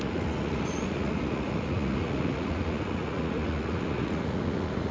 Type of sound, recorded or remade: remade